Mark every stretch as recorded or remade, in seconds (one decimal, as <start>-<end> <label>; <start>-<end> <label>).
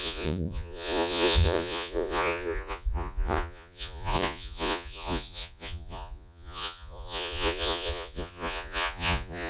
0.0-9.5 remade